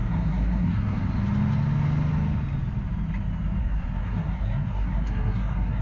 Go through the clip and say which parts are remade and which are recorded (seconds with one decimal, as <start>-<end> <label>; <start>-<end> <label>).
0.0-1.0 remade; 1.0-3.6 recorded; 3.6-5.8 remade